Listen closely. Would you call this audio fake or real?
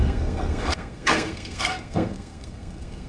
fake